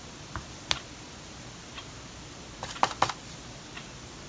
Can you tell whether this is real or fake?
real